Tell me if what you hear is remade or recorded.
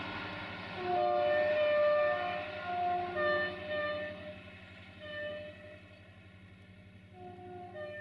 recorded